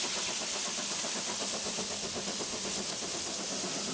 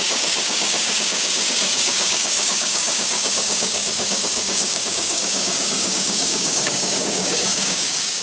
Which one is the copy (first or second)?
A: second